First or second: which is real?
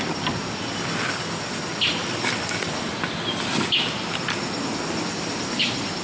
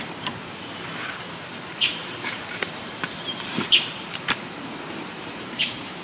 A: first